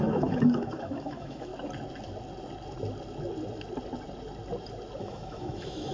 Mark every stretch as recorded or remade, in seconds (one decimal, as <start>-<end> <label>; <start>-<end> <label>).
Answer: 0.0-1.5 remade; 1.5-5.0 recorded; 5.0-5.9 remade